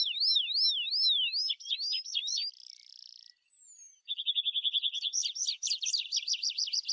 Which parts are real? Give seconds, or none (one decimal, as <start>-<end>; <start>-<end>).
0.0-2.9